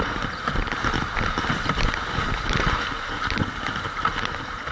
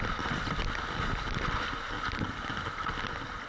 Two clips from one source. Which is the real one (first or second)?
second